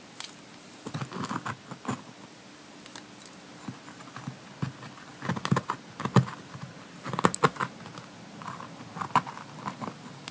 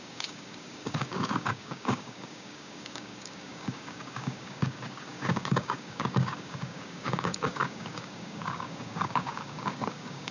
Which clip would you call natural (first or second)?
first